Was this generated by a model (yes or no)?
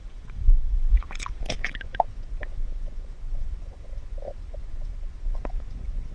yes